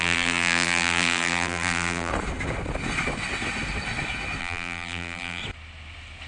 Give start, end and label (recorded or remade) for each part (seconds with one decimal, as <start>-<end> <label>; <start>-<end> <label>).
0.0-2.1 remade; 2.1-4.4 recorded; 4.4-5.4 remade; 5.4-6.3 recorded